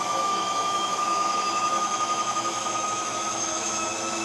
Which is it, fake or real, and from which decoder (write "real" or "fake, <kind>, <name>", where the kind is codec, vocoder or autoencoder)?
fake, autoencoder, DAC-VAE